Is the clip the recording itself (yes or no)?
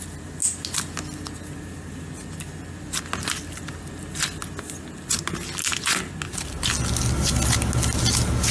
yes